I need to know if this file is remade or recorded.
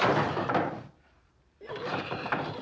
remade